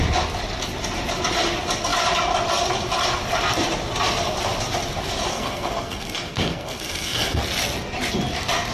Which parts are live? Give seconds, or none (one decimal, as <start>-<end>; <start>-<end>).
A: 0.0-5.3; 7.4-8.7